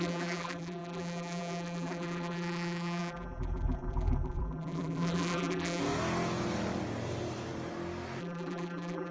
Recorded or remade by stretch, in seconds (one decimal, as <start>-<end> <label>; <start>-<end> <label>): 0.0-5.8 remade; 5.8-8.2 recorded; 8.2-9.1 remade